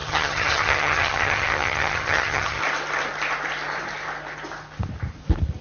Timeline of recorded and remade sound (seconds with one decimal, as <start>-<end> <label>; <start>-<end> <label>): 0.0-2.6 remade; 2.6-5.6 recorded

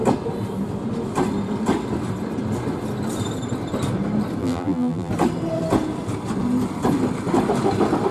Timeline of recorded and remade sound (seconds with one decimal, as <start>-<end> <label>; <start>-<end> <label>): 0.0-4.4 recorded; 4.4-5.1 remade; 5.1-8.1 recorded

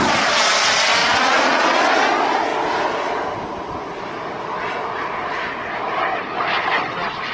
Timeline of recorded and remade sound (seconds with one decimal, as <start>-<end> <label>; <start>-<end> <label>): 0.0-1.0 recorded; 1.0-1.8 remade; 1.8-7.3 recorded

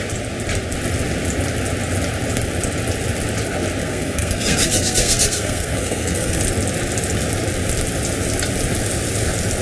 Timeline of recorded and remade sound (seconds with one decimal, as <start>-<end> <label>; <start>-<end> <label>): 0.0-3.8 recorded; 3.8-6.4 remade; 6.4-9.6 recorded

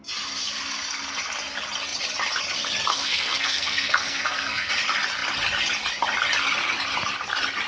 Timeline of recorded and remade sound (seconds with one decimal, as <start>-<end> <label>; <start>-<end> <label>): 0.0-2.9 recorded; 2.9-4.7 remade; 4.7-7.7 recorded